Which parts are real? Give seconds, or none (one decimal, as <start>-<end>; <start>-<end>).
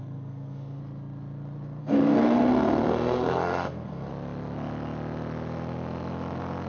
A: 0.8-1.8; 4.1-6.7